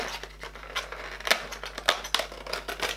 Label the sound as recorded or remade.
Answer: recorded